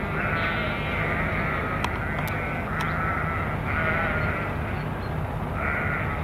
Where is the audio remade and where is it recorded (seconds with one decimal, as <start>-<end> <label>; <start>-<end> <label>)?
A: 0.0-6.2 recorded